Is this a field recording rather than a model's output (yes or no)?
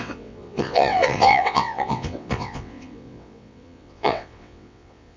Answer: no